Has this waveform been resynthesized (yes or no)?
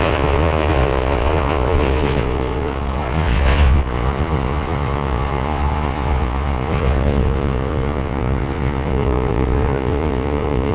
yes